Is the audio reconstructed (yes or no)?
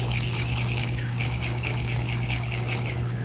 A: yes